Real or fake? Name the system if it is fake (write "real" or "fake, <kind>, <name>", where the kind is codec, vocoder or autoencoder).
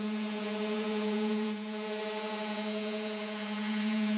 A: fake, vocoder, Vocos